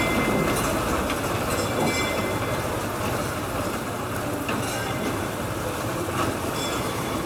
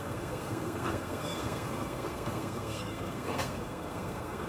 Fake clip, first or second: second